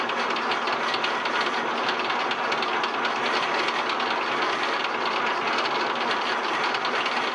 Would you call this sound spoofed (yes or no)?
no